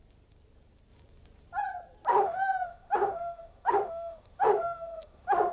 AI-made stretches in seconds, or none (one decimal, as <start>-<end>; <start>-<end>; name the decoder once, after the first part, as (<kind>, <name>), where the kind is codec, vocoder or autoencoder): 2.1-5.5 (autoencoder, DAC-VAE)